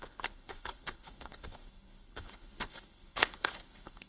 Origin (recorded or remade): remade